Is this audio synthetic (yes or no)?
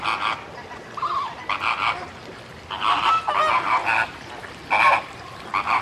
no